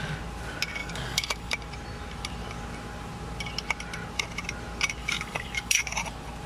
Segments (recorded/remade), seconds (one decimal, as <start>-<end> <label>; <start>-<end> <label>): 0.0-0.8 recorded; 0.8-1.5 remade; 1.5-5.0 recorded; 5.0-6.0 remade; 6.0-6.5 recorded